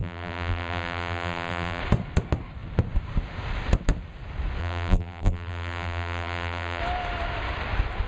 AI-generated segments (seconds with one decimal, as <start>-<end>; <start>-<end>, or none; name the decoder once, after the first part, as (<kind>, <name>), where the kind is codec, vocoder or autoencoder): 0.0-1.8 (vocoder, BigVGAN v2); 4.6-6.8